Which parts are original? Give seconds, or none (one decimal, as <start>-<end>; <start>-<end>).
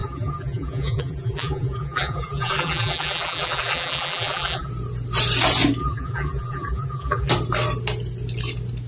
4.7-5.8; 7.3-8.9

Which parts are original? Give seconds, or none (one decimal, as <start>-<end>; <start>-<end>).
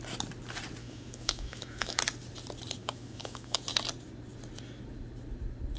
0.0-0.8; 2.0-2.8; 3.6-5.8